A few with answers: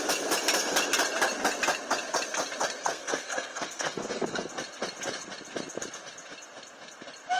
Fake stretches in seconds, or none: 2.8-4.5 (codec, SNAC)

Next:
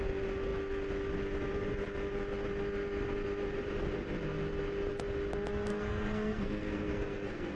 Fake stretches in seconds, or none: 5.7-7.6 (codec, SNAC)